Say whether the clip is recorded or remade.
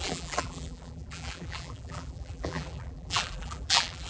remade